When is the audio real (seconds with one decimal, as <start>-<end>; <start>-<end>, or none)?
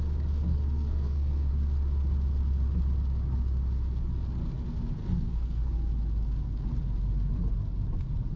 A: 0.0-0.5; 1.5-5.0; 5.7-8.4